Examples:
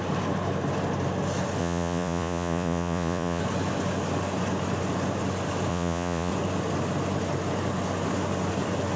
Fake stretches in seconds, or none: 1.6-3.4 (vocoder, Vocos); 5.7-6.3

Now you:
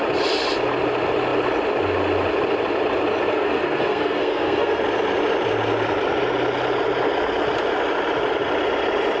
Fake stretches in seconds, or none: 3.3-4.8 (codec, SNAC)

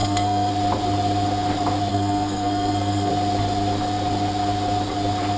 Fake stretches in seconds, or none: 0.0-0.5 (codec, SNAC); 1.9-3.1

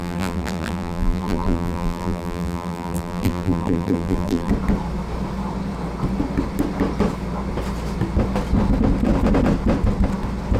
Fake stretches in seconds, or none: 0.0-4.5 (vocoder, BigVGAN v2)